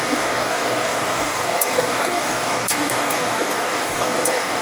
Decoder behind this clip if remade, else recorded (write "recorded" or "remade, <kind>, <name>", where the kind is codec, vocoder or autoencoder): remade, codec, DAC